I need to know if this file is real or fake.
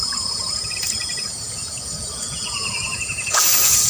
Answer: fake